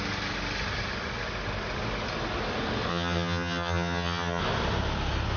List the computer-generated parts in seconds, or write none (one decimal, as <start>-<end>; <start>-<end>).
2.9-4.4